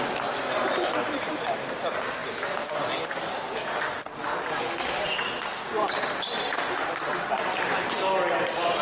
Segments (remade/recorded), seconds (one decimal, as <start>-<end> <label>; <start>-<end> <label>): 0.0-5.6 recorded; 5.6-6.1 remade; 6.1-8.8 recorded